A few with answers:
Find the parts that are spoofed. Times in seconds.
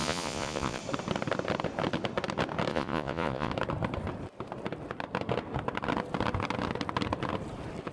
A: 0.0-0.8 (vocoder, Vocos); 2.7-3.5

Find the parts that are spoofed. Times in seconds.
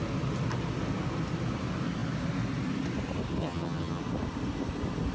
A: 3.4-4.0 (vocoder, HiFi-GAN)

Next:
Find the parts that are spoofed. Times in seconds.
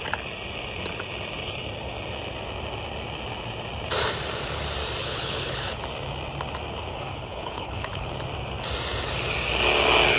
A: 5.0-5.8 (codec, HILCodec); 6.9-8.1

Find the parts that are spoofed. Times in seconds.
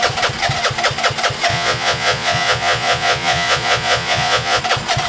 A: 1.5-4.6 (vocoder, Vocos)